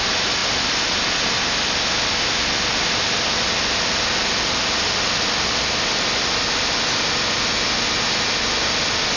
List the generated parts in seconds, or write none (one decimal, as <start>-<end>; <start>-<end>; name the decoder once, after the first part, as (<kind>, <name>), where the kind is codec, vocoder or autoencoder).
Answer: none